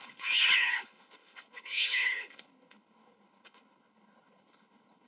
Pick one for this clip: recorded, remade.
remade